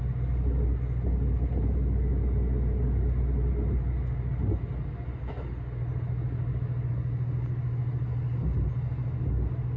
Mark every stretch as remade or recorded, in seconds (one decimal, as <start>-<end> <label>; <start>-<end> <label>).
0.0-9.8 recorded